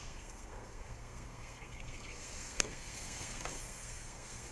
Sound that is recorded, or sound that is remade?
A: remade